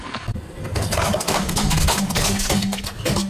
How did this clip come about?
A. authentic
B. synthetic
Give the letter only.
B